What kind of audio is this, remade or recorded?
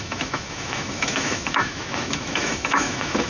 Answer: remade